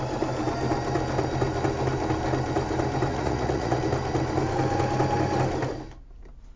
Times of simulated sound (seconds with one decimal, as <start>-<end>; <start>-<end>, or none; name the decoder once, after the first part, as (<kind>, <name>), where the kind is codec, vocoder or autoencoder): 3.1-3.8 (vocoder, Vocos)